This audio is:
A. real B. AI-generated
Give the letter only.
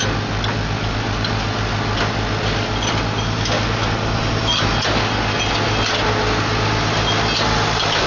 A